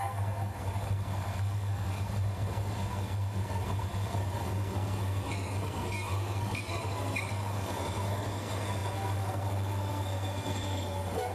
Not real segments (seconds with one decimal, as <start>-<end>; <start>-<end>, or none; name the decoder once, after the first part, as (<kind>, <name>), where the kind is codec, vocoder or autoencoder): 0.0-11.3 (codec, SNAC)